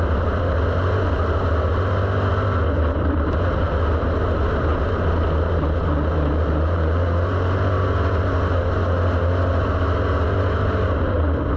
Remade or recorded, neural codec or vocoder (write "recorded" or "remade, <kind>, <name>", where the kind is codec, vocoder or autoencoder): recorded